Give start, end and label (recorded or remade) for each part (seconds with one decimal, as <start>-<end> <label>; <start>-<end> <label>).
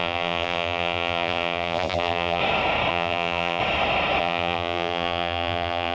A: 0.0-2.4 remade; 2.4-2.9 recorded; 2.9-3.6 remade; 3.6-4.2 recorded; 4.2-5.9 remade